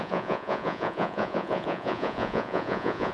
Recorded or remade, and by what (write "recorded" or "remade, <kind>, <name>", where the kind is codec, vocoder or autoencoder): remade, vocoder, Vocos